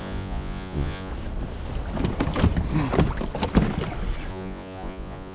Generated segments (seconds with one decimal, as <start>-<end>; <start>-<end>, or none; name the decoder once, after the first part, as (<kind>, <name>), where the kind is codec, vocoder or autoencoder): 0.0-1.1 (vocoder, Vocos); 4.3-5.3